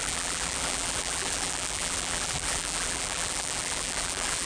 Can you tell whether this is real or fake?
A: fake